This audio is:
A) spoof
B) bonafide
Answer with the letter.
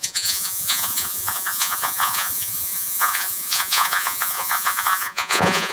A